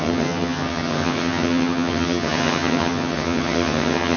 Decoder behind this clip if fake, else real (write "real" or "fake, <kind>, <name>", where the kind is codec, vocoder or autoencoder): fake, vocoder, HiFi-GAN